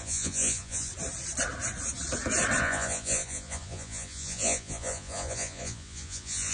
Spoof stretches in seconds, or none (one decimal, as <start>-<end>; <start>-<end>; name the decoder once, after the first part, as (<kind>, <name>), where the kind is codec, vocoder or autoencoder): 0.0-0.9 (vocoder, Vocos); 2.6-6.5